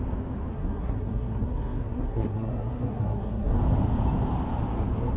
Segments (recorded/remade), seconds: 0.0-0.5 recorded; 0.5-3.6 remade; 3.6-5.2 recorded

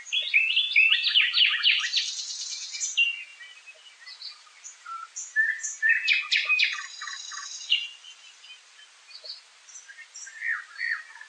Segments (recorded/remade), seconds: 0.0-11.3 recorded